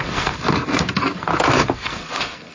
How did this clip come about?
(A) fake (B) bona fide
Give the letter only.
A